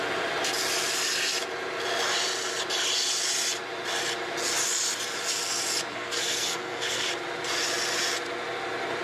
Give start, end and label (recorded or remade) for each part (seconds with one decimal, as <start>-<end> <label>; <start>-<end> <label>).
0.0-5.9 recorded; 5.9-7.1 remade; 7.1-9.0 recorded

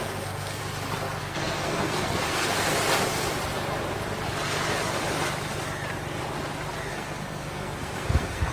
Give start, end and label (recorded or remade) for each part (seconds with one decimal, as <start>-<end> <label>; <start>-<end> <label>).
0.0-0.6 remade; 0.6-1.2 recorded; 1.2-2.7 remade; 2.7-6.9 recorded; 6.9-8.5 remade

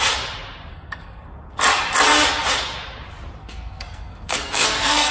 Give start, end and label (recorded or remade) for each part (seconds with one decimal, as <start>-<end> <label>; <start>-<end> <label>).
0.0-0.7 recorded; 0.7-1.2 remade; 1.2-3.4 recorded; 3.4-5.1 remade

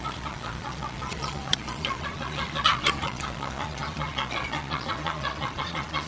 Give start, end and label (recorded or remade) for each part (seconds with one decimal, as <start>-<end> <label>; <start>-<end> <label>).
0.0-6.1 remade

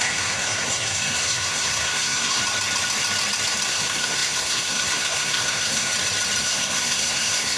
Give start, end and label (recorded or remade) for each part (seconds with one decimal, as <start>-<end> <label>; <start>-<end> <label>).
0.0-2.4 remade; 2.4-3.7 recorded; 3.7-5.9 remade; 5.9-6.4 recorded; 6.4-7.6 remade

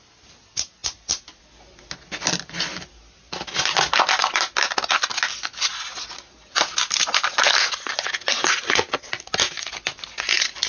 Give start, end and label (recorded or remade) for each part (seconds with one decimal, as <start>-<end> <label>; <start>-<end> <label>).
0.0-10.7 recorded

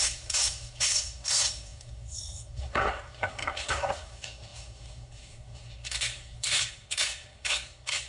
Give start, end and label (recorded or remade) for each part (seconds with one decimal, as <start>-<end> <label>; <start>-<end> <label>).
0.0-8.1 remade